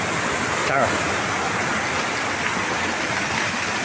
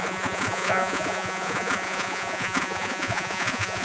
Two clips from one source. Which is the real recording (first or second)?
first